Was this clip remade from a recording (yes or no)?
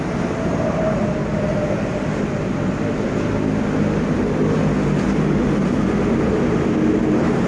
no